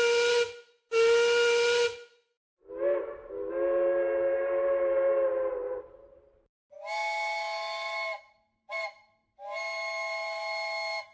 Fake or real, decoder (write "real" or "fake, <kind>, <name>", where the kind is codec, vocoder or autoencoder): real